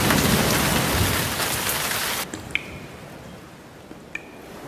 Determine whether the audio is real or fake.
real